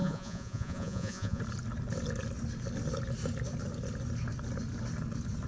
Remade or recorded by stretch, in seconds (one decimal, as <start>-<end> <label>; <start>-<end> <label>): 0.0-1.4 remade; 1.4-5.5 recorded

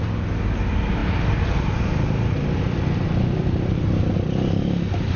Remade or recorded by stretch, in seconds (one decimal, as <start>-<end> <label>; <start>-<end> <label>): 0.0-5.2 recorded